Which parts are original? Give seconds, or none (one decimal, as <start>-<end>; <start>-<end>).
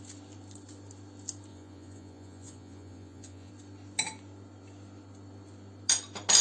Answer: 0.0-1.5; 3.5-6.4